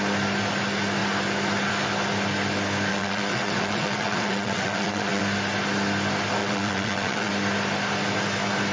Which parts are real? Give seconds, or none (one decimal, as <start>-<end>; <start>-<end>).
0.0-2.9; 5.2-6.4; 7.3-8.7